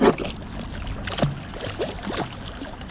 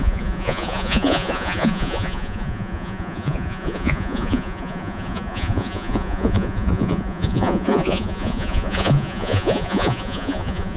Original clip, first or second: first